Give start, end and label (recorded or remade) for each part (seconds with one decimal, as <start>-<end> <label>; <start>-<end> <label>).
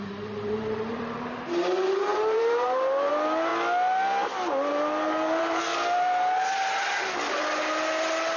0.0-3.5 remade; 3.5-4.7 recorded; 4.7-5.7 remade; 5.7-8.4 recorded